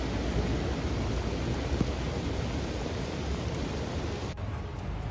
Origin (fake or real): real